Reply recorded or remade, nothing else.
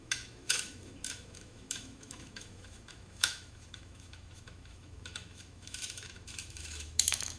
remade